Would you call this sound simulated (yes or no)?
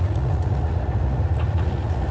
yes